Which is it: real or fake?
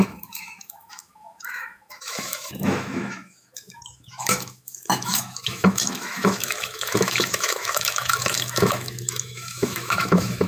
fake